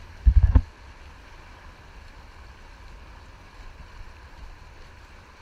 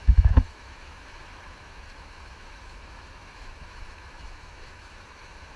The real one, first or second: first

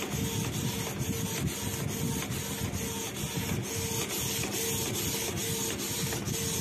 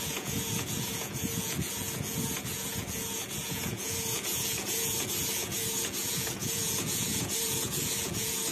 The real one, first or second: first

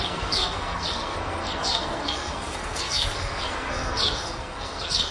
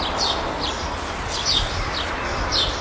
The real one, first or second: second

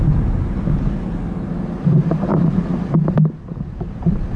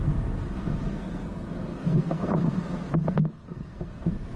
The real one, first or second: first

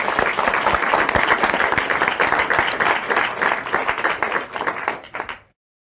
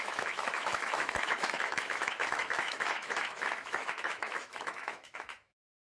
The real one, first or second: first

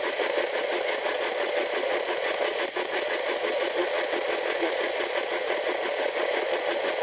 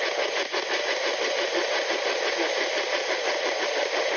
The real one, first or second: second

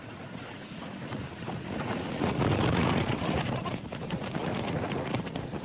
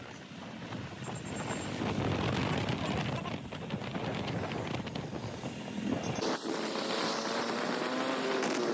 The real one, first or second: second